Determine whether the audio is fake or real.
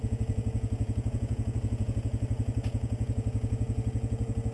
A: fake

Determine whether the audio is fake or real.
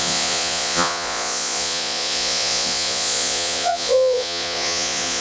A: fake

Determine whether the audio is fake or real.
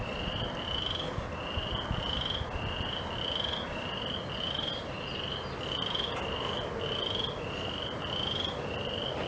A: real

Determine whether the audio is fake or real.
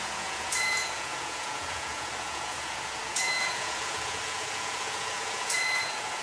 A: fake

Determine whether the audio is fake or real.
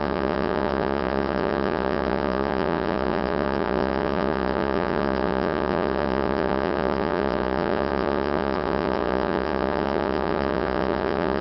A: fake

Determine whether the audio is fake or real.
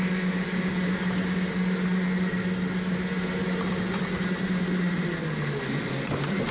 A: real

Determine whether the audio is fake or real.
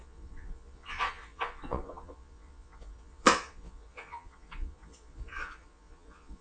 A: fake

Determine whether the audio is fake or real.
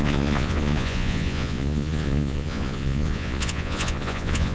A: fake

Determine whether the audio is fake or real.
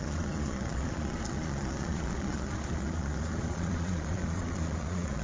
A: fake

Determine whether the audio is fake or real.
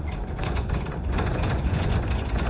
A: fake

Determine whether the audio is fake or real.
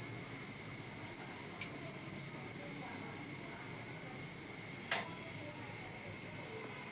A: real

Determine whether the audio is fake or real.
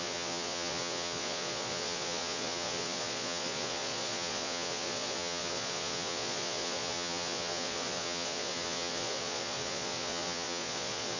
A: fake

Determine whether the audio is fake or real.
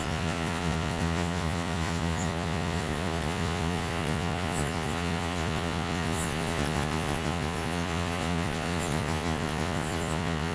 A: fake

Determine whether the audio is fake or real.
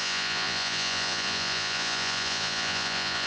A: fake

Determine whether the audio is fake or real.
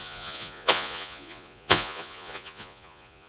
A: fake